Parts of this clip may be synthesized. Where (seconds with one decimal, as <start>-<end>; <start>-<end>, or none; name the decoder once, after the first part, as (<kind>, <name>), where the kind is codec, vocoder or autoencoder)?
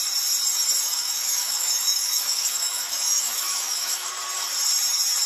0.9-4.1 (autoencoder, DAC-VAE)